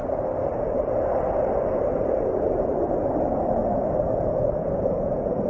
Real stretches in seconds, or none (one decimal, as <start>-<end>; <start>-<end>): 0.0-4.4